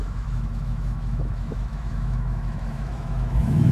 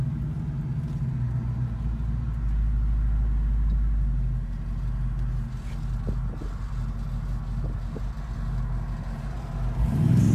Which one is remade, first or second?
first